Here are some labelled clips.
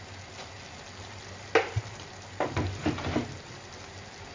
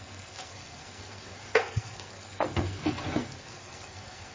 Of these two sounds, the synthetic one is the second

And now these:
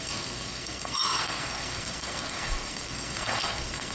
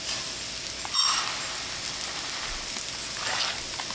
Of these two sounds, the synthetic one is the first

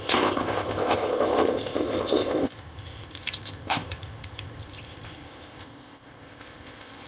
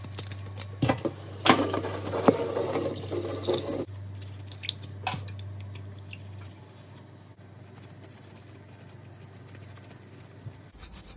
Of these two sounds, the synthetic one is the first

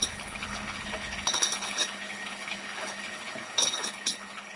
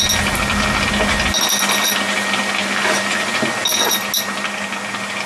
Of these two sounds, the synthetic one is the first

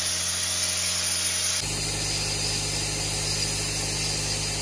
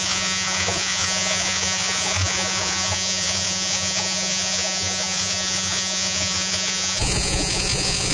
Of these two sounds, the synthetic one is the second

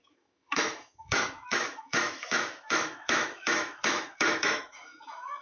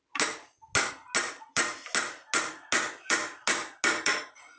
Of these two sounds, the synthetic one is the first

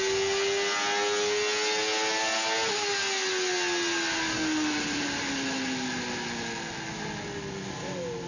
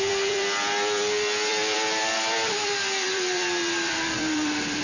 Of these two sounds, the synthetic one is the second